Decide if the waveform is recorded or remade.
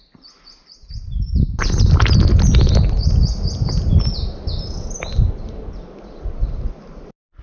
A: recorded